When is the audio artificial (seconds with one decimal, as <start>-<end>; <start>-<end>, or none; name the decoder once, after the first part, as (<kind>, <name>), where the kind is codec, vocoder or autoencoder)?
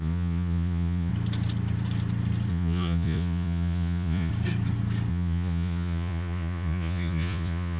0.0-1.1 (vocoder, Vocos); 2.5-4.3; 5.1-7.8